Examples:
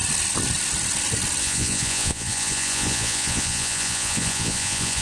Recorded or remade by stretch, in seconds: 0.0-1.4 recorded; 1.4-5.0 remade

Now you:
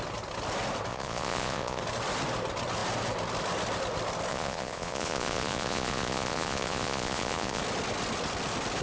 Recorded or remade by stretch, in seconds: 0.0-0.9 recorded; 0.9-1.8 remade; 1.8-4.3 recorded; 4.3-7.6 remade; 7.6-8.8 recorded

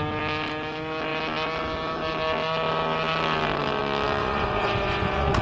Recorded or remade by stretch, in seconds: 0.0-4.2 recorded; 4.2-5.4 remade